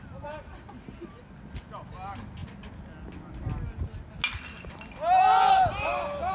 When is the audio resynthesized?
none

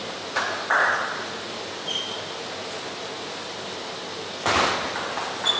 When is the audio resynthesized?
none

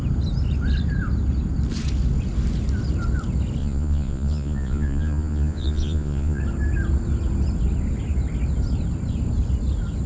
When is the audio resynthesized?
3.6-6.4

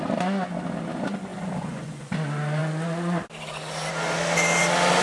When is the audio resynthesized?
1.3-2.1

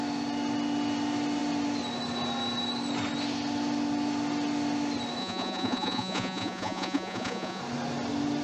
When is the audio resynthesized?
5.2-7.6

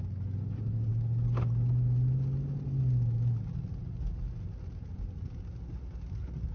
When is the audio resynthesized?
none

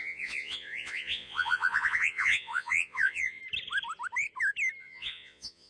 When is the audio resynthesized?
0.0-3.4; 4.8-5.7

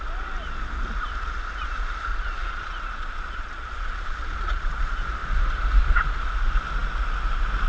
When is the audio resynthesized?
2.1-4.8